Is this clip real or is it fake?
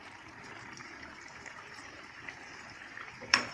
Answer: fake